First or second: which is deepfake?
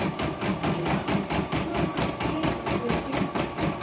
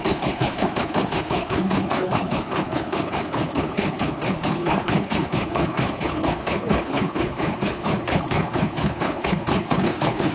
second